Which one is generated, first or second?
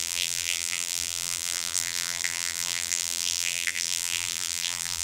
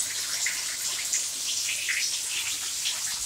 first